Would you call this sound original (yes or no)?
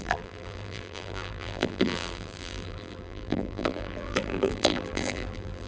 no